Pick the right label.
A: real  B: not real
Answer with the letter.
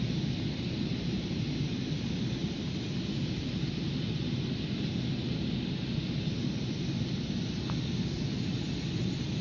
A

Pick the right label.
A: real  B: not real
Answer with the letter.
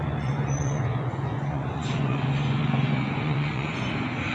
B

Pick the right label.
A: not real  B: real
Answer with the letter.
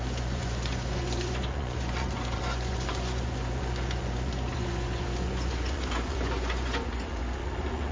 A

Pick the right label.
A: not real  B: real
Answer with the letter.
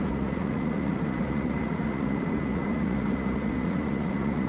A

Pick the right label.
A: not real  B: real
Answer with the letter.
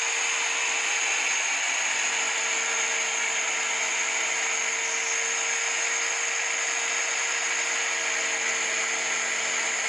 B